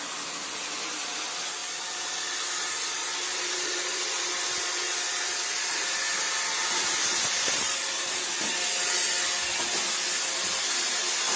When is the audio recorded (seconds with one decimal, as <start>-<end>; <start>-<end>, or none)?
0.0-3.3; 4.3-6.6; 8.2-11.4